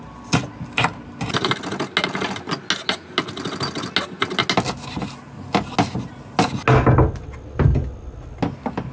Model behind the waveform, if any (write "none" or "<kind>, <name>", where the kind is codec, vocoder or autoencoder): none